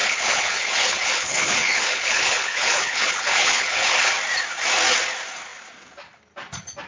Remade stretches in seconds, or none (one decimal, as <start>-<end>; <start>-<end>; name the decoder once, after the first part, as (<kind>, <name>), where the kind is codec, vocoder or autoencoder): 0.0-4.1 (codec, HILCodec)